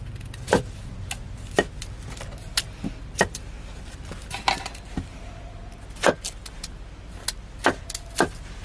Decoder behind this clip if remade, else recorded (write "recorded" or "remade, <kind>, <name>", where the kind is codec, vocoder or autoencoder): recorded